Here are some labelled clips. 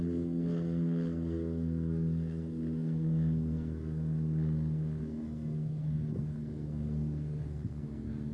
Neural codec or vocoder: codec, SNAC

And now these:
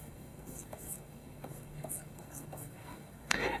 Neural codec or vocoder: codec, SNAC